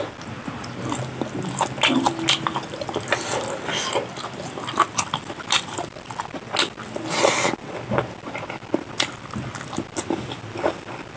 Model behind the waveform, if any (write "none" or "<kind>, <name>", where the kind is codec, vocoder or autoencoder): none